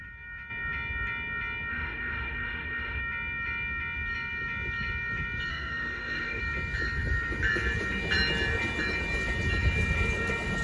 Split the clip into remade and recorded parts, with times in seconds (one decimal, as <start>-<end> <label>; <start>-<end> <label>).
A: 0.0-1.7 recorded; 1.7-3.0 remade; 3.0-5.5 recorded; 5.5-6.4 remade; 6.4-10.6 recorded